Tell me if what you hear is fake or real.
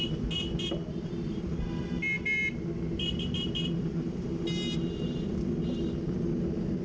real